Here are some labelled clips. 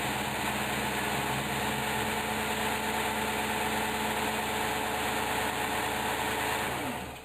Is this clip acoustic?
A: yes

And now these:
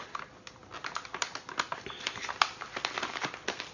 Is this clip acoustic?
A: yes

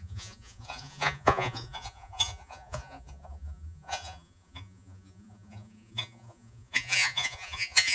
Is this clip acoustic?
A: no